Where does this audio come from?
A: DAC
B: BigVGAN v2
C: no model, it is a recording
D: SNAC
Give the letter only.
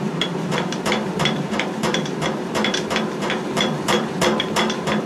B